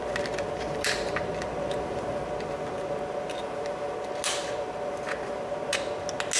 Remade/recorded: recorded